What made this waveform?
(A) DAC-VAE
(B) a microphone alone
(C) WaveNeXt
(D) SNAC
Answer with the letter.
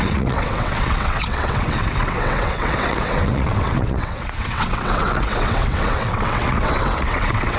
C